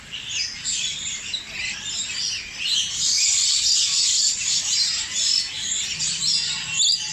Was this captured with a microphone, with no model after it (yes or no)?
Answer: yes